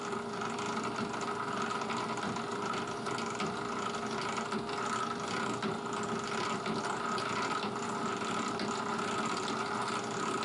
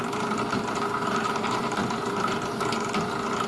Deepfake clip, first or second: second